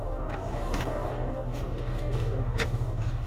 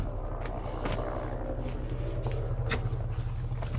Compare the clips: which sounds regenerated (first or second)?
first